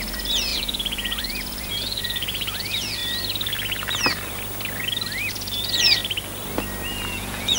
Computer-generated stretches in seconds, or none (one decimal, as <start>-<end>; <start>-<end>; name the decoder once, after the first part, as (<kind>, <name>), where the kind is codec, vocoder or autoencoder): 0.0-3.0 (vocoder, Vocos); 5.3-6.0; 6.9-7.6